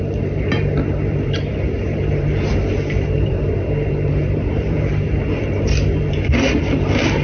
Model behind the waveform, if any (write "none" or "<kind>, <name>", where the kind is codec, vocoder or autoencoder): vocoder, BigVGAN v2